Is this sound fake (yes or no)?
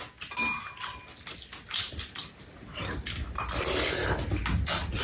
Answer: no